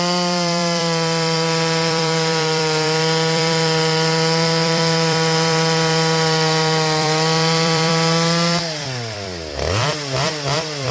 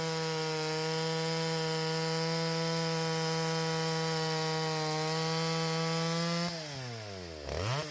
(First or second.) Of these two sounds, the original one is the second